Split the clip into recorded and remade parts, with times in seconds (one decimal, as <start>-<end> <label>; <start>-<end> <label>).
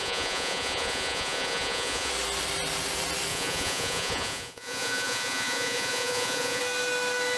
0.0-2.1 remade; 2.1-3.3 recorded; 3.3-6.6 remade; 6.6-7.4 recorded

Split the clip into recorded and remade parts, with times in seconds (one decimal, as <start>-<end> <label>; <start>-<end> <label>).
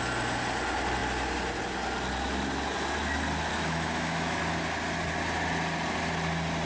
0.0-3.5 recorded; 3.5-4.4 remade; 4.4-6.7 recorded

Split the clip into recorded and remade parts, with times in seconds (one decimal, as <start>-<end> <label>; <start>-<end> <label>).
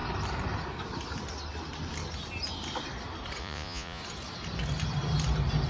0.0-3.4 recorded; 3.4-4.0 remade; 4.0-5.7 recorded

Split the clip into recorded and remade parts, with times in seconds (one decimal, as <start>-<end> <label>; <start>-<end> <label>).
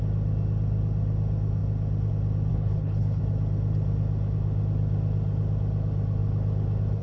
0.0-2.5 recorded; 2.5-3.2 remade; 3.2-7.0 recorded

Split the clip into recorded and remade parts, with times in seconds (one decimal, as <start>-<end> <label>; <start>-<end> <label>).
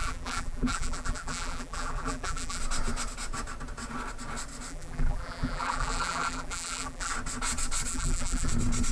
0.0-2.6 remade; 2.6-4.7 recorded; 4.7-7.1 remade; 7.1-7.9 recorded; 7.9-8.5 remade; 8.5-8.9 recorded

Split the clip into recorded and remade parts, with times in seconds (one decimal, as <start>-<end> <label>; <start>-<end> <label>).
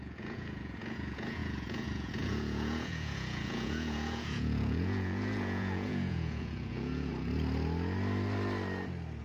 0.0-7.1 remade; 7.1-9.2 recorded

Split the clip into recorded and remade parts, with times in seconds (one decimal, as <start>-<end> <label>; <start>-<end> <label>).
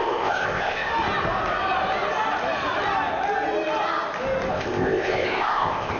0.0-0.9 remade; 0.9-4.5 recorded; 4.5-6.0 remade